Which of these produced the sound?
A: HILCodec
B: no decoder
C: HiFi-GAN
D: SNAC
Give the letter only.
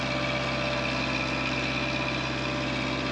B